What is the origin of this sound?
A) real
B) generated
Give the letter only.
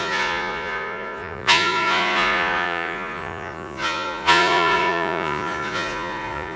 B